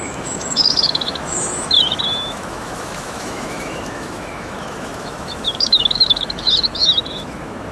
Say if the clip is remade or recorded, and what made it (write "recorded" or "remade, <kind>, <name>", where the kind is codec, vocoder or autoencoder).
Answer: remade, autoencoder, DAC-VAE